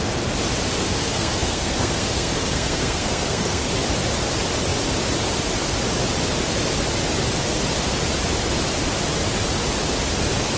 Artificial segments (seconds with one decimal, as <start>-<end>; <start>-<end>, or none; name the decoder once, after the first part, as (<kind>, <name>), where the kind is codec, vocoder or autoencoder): 0.8-3.7 (codec, SNAC)